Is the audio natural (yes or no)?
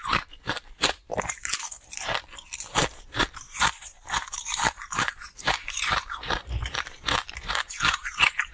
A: no